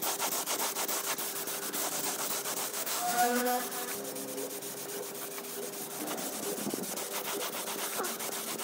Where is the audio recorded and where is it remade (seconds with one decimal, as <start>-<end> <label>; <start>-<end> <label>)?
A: 0.0-2.7 recorded; 2.7-3.6 remade; 3.6-8.6 recorded